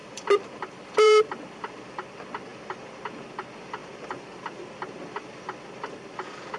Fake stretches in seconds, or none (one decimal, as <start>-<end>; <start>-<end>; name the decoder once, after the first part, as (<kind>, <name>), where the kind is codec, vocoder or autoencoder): 0.0-1.6 (vocoder, BigVGAN v2)